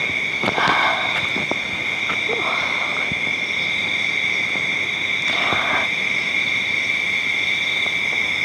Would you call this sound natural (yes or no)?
yes